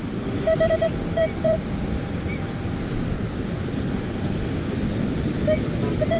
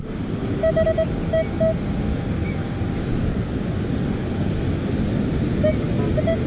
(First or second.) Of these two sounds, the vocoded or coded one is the first